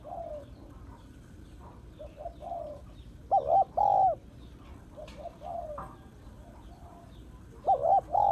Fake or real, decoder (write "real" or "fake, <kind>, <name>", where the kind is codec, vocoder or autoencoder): real